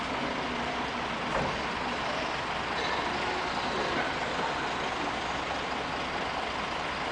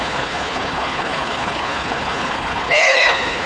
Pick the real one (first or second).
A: first